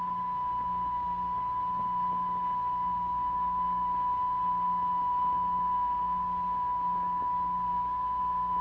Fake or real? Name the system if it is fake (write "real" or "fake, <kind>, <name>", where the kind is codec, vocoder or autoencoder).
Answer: real